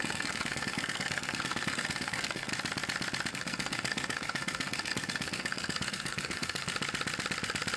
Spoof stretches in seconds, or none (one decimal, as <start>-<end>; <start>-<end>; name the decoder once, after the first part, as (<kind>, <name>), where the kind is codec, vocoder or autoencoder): 0.0-2.5 (codec, SNAC); 3.3-6.7